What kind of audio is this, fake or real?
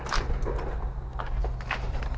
real